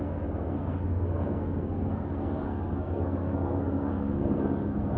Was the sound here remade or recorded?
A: remade